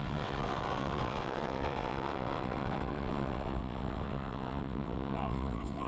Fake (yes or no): yes